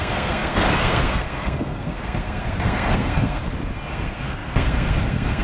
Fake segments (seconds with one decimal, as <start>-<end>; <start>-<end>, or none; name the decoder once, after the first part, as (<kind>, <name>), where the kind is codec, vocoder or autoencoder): 0.0-3.4 (codec, SNAC); 3.9-5.4